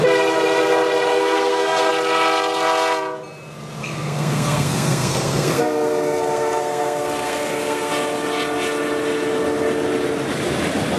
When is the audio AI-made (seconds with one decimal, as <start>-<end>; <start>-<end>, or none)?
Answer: 1.1-1.9; 3.8-7.9